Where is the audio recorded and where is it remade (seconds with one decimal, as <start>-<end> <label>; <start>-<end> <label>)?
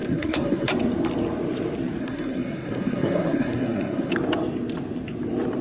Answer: 0.0-0.7 remade; 0.7-2.0 recorded; 2.0-4.1 remade; 4.1-5.6 recorded